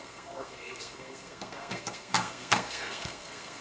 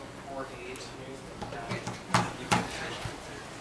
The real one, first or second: second